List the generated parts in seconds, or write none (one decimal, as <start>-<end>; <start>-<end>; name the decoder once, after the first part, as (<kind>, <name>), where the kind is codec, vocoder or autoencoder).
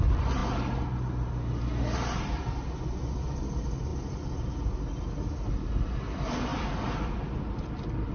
0.0-0.4 (vocoder, BigVGAN v2); 3.1-3.9; 4.7-8.1